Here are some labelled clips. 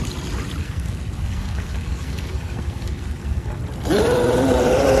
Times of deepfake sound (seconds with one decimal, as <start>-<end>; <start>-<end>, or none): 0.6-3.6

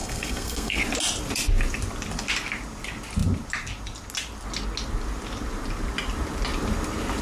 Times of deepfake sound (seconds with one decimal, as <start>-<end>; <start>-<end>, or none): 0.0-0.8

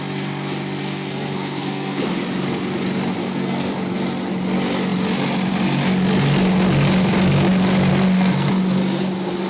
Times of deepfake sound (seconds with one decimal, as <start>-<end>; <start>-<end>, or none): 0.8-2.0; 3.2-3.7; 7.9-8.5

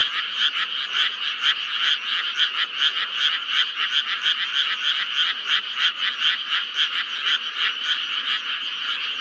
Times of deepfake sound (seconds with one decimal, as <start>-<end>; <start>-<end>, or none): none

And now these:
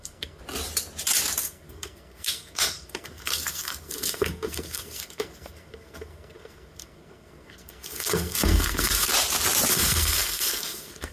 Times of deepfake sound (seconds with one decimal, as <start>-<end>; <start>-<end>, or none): 0.0-0.4; 1.4-9.1; 9.7-11.1

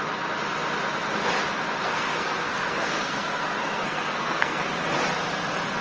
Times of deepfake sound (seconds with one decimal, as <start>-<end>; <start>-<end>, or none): 1.8-4.7

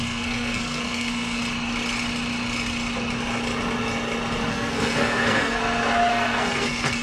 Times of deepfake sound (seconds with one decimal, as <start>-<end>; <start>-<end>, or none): 0.0-1.4; 4.5-5.6; 6.1-7.0